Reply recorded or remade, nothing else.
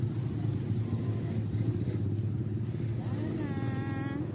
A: recorded